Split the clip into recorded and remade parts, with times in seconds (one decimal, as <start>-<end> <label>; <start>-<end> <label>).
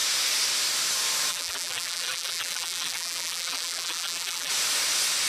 0.0-1.3 recorded; 1.3-4.5 remade; 4.5-5.3 recorded